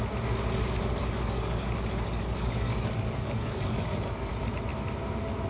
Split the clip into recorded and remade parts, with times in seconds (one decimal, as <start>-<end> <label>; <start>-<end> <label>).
0.0-1.0 recorded; 1.0-4.3 remade; 4.3-5.5 recorded